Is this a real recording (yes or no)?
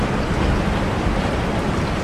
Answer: yes